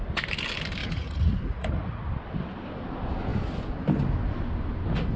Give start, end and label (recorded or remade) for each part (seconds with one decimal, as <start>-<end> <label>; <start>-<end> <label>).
0.0-0.8 recorded; 0.8-2.0 remade; 2.0-5.2 recorded